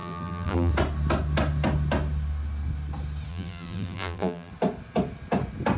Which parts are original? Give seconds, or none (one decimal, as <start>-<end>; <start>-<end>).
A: 0.7-3.3; 4.5-5.8